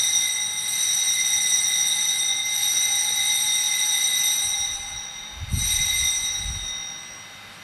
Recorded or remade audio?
recorded